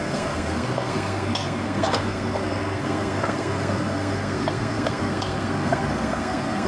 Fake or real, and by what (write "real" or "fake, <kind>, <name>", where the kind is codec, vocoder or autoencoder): fake, codec, SNAC